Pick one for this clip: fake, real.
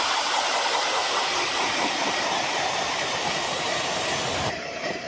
fake